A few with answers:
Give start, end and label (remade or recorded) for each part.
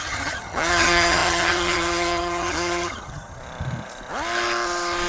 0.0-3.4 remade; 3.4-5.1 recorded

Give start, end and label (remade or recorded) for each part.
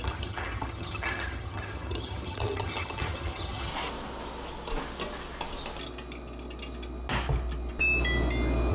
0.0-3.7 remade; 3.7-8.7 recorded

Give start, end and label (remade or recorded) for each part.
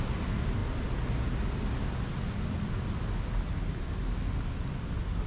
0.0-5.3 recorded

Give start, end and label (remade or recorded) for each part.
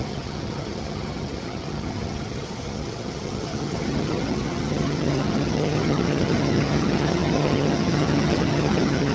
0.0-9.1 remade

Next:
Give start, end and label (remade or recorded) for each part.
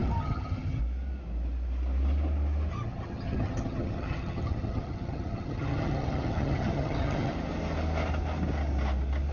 0.0-0.8 remade; 0.8-2.7 recorded; 2.7-7.3 remade; 7.3-9.3 recorded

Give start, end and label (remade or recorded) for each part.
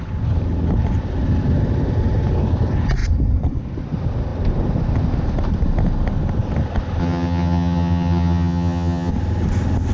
0.0-7.0 recorded; 7.0-9.1 remade; 9.1-9.9 recorded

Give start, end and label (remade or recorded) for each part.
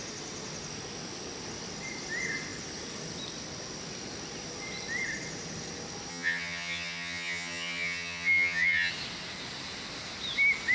0.0-6.1 recorded; 6.1-8.9 remade; 8.9-10.7 recorded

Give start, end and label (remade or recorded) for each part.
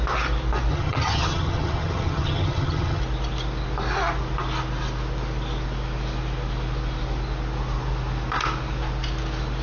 0.0-0.7 recorded; 0.7-3.0 remade; 3.0-9.6 recorded